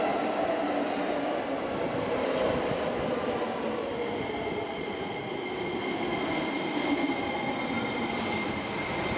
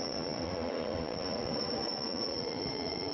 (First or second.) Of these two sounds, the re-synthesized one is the second